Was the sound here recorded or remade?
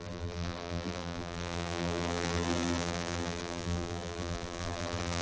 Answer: remade